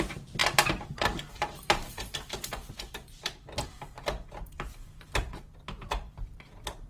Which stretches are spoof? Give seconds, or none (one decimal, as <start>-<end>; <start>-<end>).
0.0-6.9

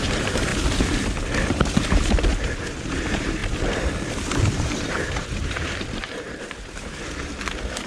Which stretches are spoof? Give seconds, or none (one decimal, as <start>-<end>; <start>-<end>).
0.0-0.5; 1.4-7.9

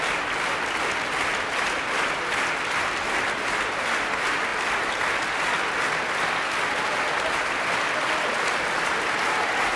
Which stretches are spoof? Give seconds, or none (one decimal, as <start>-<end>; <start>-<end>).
none

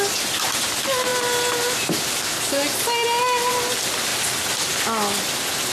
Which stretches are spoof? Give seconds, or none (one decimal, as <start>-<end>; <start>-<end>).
none

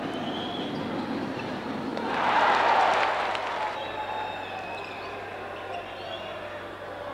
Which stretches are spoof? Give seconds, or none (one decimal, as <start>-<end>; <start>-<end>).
1.9-3.1

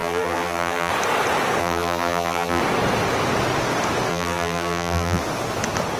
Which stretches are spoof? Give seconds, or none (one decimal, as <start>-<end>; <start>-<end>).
0.0-0.9; 1.6-2.6; 4.1-5.2